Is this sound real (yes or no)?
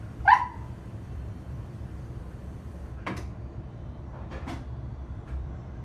no